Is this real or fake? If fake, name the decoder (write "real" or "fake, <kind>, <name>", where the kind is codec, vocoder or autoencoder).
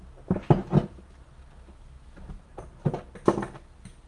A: real